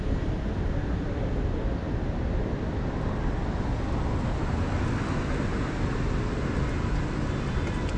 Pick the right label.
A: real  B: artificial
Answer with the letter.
A